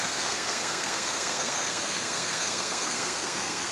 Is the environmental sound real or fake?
fake